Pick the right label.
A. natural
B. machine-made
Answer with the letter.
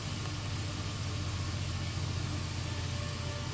A